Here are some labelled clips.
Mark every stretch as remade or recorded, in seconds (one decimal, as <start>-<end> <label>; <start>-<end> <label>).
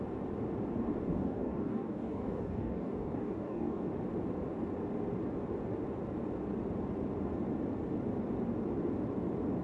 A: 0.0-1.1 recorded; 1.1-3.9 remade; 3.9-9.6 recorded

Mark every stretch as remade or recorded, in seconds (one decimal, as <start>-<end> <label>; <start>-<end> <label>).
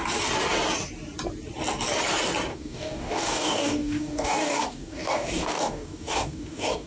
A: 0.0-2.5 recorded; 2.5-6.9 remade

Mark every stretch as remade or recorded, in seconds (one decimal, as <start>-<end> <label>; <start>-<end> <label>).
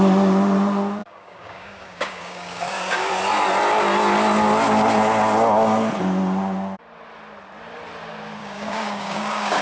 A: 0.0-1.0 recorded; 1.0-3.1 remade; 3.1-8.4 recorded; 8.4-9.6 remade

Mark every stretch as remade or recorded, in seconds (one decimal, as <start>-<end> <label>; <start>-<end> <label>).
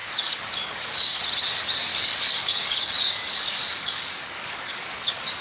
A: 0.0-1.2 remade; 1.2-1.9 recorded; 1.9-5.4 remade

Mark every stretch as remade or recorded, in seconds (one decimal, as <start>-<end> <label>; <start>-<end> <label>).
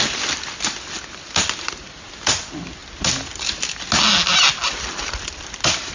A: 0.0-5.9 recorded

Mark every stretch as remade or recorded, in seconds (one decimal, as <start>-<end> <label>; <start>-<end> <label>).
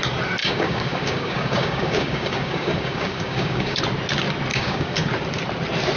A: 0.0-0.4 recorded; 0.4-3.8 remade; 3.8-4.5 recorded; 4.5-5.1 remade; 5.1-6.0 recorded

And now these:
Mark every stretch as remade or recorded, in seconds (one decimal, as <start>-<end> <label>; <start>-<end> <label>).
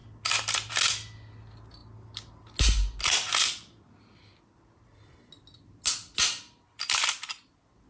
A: 0.0-7.9 recorded